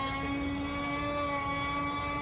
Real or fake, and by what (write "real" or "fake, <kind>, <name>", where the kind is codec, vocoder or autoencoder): real